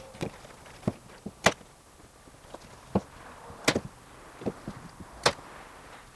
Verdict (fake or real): real